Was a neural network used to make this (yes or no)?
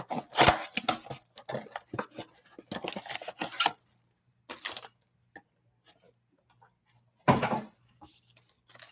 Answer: no